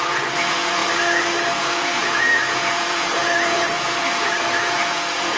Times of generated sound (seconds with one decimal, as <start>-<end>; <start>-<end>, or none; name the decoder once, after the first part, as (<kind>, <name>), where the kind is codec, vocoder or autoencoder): 0.0-0.8 (vocoder, Vocos); 1.6-5.4

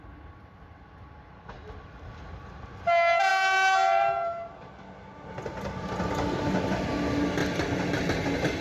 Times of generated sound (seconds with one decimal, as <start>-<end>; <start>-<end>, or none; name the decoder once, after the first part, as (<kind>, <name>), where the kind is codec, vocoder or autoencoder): none

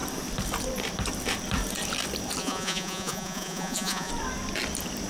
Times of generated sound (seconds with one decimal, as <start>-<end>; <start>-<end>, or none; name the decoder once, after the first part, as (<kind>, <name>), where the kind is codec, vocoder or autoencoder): 2.4-4.1 (vocoder, Vocos)

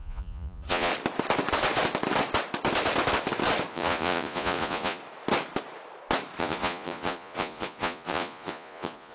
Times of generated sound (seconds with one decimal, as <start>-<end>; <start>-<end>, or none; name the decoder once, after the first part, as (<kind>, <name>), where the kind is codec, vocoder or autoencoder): 0.0-0.9 (vocoder, Vocos); 3.7-5.0; 6.4-9.1

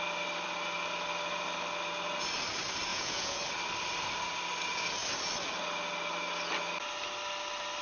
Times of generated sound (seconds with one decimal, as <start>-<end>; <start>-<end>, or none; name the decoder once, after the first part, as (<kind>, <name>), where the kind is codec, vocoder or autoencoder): 2.9-3.4 (vocoder, Vocos)

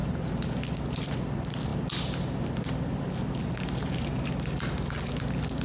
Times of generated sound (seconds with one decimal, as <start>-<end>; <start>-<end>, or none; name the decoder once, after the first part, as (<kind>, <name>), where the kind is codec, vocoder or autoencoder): none